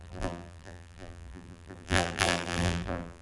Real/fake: fake